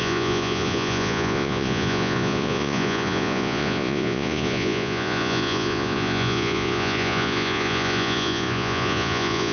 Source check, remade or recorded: remade